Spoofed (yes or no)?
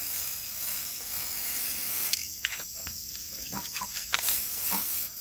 yes